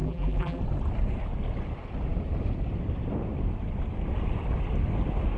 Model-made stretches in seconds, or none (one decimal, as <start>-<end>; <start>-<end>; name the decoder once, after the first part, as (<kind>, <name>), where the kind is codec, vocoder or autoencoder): 0.0-0.6 (vocoder, BigVGAN v2)

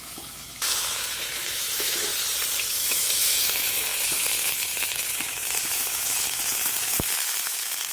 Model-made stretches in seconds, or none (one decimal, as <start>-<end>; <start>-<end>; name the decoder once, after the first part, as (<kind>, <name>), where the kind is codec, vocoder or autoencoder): 0.0-2.1 (autoencoder, DAC-VAE); 2.7-7.9

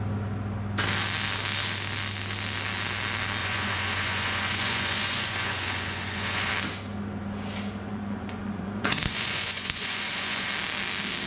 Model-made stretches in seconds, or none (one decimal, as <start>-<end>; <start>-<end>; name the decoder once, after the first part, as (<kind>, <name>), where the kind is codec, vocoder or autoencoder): 3.4-6.5 (vocoder, Vocos); 7.9-10.5

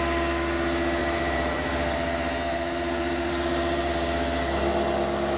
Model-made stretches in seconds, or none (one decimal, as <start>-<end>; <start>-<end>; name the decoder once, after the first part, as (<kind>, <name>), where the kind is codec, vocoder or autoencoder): 1.0-3.9 (vocoder, BigVGAN v2)

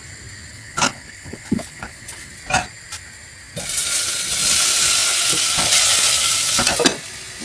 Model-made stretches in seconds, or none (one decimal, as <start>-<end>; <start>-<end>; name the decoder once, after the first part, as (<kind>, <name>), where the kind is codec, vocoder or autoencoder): 0.5-2.3 (codec, HILCodec)

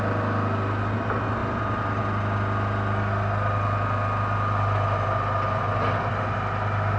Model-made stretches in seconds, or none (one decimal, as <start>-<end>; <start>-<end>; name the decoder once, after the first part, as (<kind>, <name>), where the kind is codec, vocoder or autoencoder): none